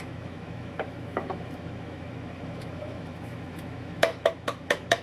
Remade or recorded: remade